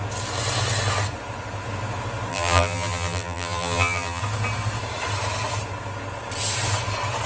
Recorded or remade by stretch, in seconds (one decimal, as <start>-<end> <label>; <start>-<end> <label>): 0.0-2.3 recorded; 2.3-4.2 remade; 4.2-7.3 recorded